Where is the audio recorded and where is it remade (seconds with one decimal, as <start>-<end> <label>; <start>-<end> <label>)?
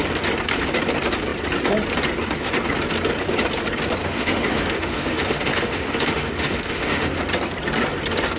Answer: 0.0-4.0 recorded; 4.0-7.2 remade; 7.2-8.4 recorded